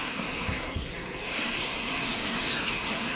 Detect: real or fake fake